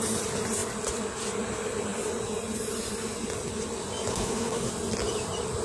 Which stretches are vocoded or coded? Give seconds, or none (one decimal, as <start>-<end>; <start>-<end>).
4.1-4.7

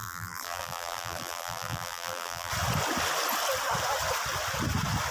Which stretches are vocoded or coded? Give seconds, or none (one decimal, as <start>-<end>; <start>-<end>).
0.0-2.5

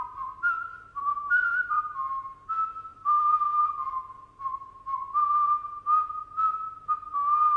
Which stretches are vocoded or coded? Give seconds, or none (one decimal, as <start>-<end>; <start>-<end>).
0.7-1.9; 2.9-3.9

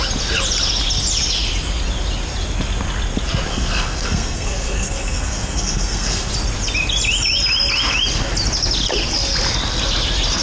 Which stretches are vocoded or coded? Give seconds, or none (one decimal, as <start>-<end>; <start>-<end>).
3.5-6.3

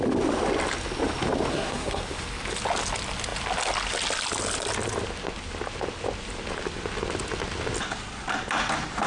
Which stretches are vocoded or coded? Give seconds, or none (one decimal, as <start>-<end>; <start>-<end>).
1.5-2.0